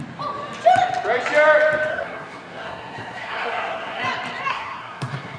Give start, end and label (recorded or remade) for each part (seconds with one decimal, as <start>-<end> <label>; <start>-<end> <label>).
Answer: 0.0-1.9 recorded; 1.9-4.0 remade; 4.0-4.5 recorded; 4.5-5.4 remade